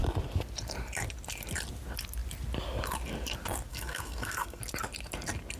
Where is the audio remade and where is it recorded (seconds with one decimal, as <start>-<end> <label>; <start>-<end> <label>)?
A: 0.0-3.7 recorded; 3.7-4.6 remade; 4.6-5.6 recorded